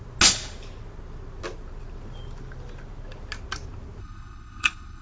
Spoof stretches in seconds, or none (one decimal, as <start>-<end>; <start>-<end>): 4.0-5.0